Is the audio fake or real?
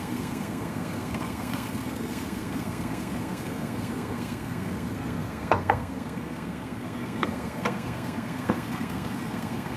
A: fake